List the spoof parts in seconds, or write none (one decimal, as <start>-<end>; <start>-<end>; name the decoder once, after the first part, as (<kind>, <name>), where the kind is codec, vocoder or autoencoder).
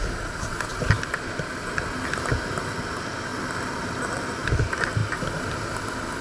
5.0-6.2 (vocoder, BigVGAN v2)